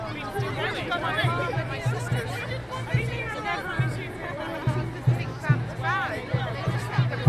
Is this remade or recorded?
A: recorded